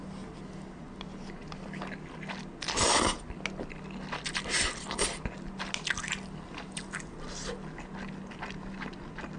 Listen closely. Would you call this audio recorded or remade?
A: recorded